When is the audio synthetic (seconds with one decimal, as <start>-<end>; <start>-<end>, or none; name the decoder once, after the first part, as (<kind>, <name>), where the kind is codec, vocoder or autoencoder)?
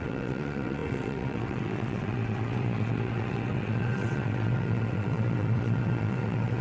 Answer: 0.0-6.6 (vocoder, WaveNeXt)